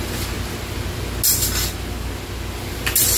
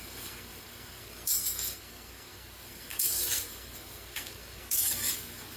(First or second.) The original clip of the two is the first